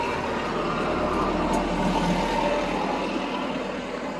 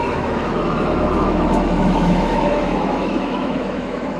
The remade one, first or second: second